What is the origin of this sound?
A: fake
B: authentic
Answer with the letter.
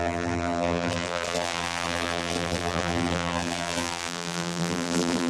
A